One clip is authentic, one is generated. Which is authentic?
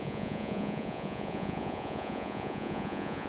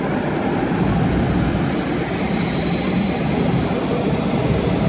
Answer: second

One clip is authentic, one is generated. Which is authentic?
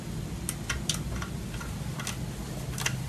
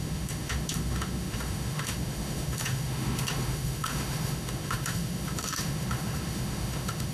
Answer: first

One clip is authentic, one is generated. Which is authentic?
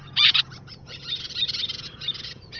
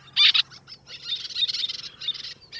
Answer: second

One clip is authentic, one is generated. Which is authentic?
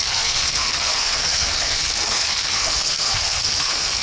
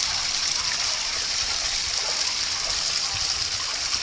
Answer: second